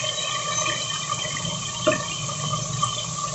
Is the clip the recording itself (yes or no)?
yes